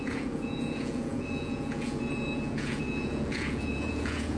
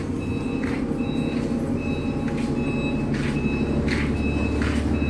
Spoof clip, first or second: first